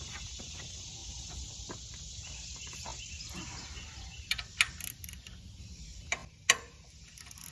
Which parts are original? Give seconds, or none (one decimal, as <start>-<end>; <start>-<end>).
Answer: 0.0-7.5